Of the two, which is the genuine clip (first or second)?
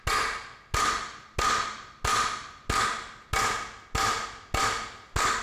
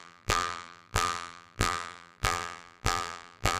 first